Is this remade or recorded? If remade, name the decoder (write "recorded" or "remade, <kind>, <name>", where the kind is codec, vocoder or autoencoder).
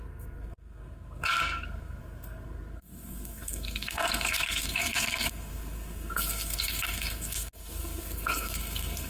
remade, codec, SNAC